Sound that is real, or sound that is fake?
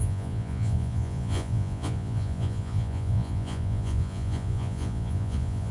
fake